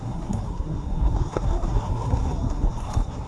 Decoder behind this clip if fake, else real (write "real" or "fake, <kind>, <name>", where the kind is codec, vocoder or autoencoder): fake, codec, SNAC